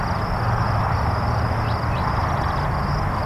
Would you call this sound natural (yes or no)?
yes